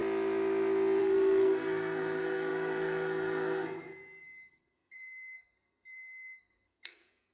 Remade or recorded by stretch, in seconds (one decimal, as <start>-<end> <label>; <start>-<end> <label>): 0.0-1.0 recorded; 1.0-7.3 remade